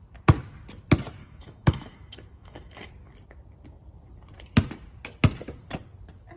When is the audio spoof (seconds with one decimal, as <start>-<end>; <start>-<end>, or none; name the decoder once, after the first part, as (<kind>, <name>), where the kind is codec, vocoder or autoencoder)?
1.2-2.9 (autoencoder, DAC-VAE)